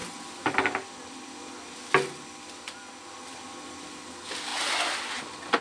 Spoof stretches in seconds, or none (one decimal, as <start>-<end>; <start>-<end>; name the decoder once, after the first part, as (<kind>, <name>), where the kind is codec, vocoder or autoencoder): none